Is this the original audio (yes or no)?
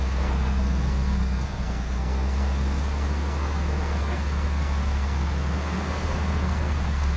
no